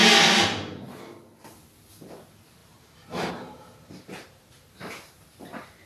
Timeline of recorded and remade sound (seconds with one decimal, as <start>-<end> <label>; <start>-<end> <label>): 0.0-2.1 recorded; 2.1-5.9 remade